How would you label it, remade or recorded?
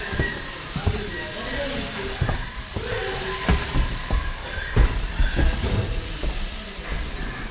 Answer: recorded